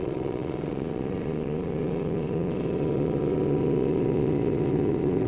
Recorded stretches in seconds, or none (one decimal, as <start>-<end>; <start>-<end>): none